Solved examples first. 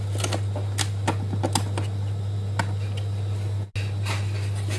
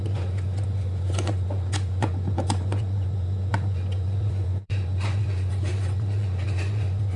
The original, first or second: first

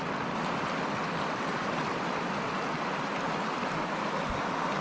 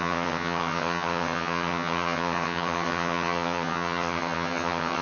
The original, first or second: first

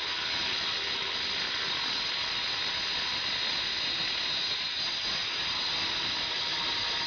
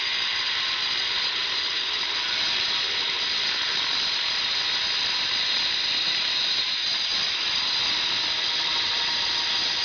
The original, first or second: first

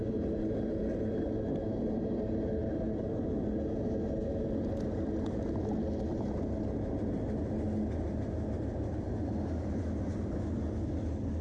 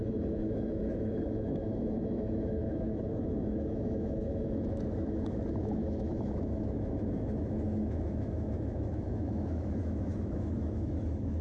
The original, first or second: first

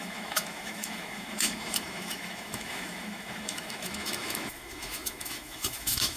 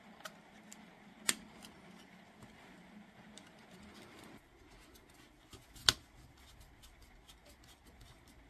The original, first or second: second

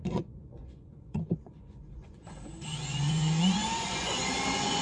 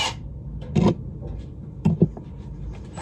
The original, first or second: second